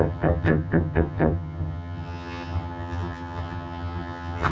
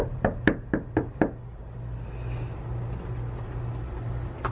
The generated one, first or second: first